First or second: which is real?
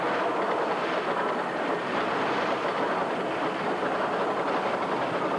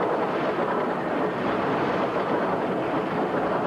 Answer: second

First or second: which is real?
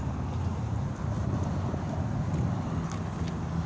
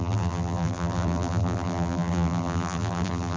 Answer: first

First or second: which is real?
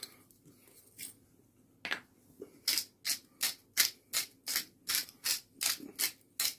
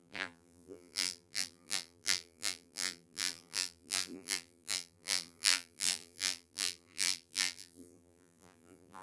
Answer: first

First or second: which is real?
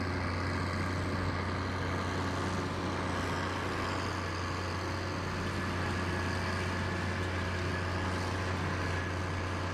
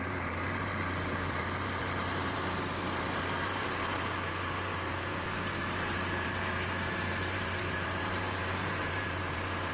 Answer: first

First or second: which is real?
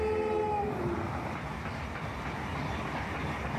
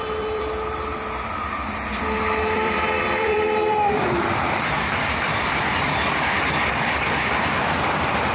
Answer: first